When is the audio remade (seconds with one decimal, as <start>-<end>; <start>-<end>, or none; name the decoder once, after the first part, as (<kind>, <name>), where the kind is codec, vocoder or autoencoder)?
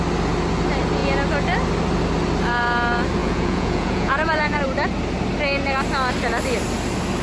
3.2-4.6 (vocoder, Vocos)